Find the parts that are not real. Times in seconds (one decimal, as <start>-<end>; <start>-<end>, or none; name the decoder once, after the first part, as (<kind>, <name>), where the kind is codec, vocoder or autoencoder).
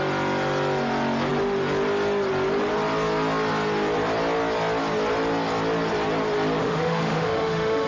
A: 6.6-7.9 (autoencoder, DAC-VAE)